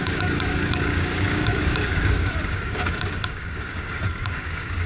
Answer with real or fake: fake